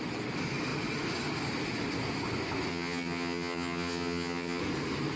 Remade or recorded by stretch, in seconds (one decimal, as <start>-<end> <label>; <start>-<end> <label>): 0.0-2.7 recorded; 2.7-4.6 remade; 4.6-5.2 recorded